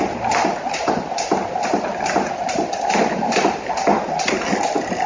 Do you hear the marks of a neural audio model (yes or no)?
no